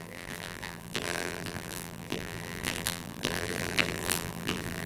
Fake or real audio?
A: fake